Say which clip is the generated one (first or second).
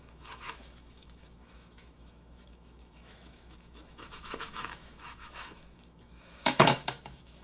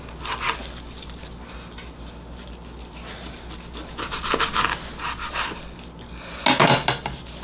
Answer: first